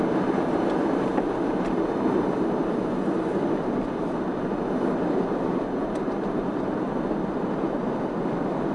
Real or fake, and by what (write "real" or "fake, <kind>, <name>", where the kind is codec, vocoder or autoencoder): fake, vocoder, BigVGAN v2